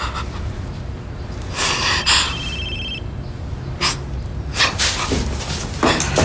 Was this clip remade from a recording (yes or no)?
no